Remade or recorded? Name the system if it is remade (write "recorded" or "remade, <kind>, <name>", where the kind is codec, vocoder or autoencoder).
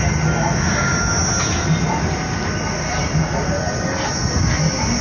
recorded